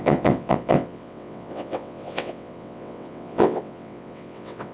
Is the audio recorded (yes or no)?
no